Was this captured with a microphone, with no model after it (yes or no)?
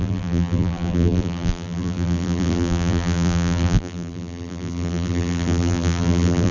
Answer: no